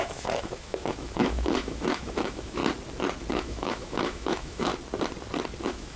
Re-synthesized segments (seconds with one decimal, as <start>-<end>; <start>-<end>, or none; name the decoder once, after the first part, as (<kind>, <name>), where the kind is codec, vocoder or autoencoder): 0.0-2.6 (autoencoder, DAC-VAE); 3.3-4.7; 5.6-6.0